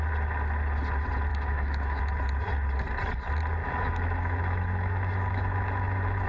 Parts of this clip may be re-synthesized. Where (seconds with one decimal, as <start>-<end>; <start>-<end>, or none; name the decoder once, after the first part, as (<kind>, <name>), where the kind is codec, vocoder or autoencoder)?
1.3-2.0 (autoencoder, DAC-VAE); 3.6-6.3